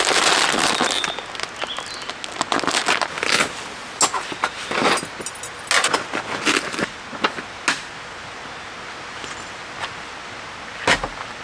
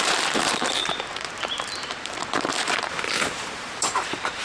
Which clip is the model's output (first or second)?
second